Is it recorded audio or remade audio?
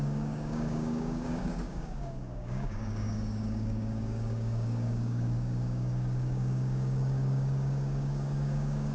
remade